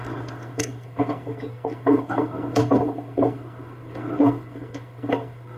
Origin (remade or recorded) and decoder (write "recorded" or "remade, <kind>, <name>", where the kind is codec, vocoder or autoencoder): remade, codec, SNAC